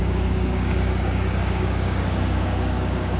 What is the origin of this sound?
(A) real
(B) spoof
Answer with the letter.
B